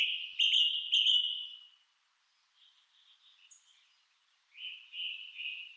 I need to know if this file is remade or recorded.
recorded